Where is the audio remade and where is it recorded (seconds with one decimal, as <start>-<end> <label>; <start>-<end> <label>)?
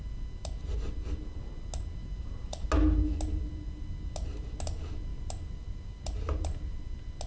0.0-5.1 recorded; 5.1-6.8 remade; 6.8-7.3 recorded